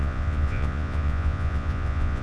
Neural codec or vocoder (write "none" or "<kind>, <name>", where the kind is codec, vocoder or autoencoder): vocoder, Vocos